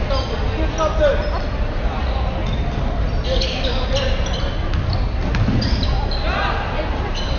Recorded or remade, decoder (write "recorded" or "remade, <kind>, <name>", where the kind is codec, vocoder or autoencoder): recorded